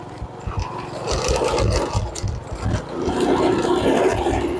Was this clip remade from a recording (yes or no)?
no